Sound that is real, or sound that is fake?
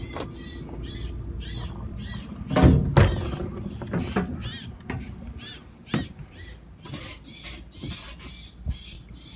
real